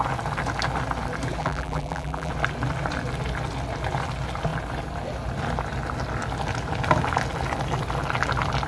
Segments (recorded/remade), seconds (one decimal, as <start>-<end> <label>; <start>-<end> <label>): 0.0-1.4 recorded; 1.4-2.3 remade; 2.3-8.7 recorded